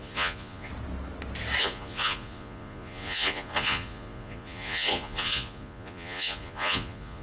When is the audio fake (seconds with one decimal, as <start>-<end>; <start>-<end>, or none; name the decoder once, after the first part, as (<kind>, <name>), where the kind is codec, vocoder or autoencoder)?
0.0-0.7 (vocoder, Vocos); 1.6-7.2